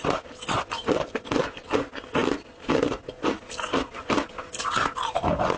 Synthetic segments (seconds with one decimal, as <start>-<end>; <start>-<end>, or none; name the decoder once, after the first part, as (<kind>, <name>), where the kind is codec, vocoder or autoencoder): 0.8-1.4 (vocoder, BigVGAN v2); 2.2-4.3